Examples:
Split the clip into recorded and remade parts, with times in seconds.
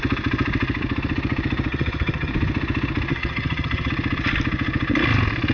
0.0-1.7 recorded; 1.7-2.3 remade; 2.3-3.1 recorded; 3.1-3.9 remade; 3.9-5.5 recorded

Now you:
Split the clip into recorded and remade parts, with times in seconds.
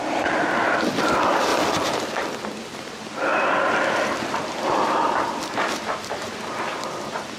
0.0-7.4 remade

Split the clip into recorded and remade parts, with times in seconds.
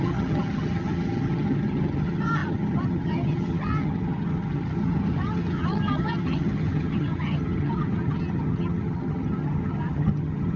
0.0-10.6 remade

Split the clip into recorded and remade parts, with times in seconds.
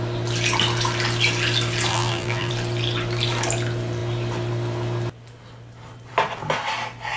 0.0-1.9 recorded; 1.9-2.5 remade; 2.5-7.2 recorded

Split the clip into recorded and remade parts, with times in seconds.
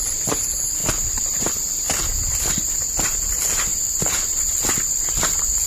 0.0-0.8 remade; 0.8-2.4 recorded; 2.4-3.7 remade; 3.7-4.4 recorded; 4.4-5.7 remade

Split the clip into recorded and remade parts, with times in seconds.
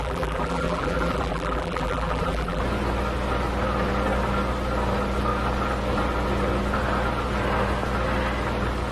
0.0-2.6 remade; 2.6-8.9 recorded